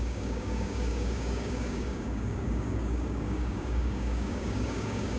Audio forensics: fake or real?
fake